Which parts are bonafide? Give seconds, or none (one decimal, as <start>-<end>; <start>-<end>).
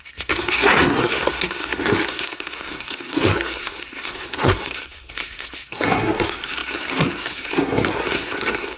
none